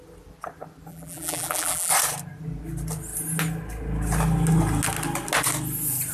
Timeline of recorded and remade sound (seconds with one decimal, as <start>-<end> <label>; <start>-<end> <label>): 0.0-0.9 recorded; 0.9-1.9 remade; 1.9-6.1 recorded